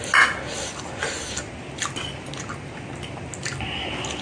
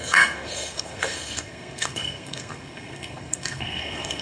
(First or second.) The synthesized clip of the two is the second